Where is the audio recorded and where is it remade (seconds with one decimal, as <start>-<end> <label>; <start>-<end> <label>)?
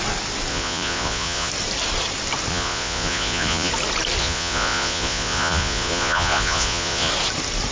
0.0-0.5 recorded; 0.5-1.5 remade; 1.5-2.5 recorded; 2.5-3.7 remade; 3.7-4.2 recorded; 4.2-7.1 remade; 7.1-7.7 recorded